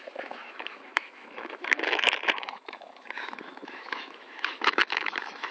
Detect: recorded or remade remade